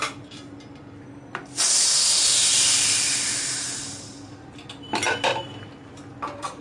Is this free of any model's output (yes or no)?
yes